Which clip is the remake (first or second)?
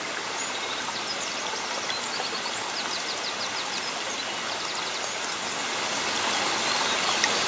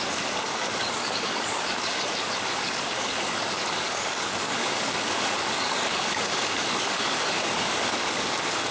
second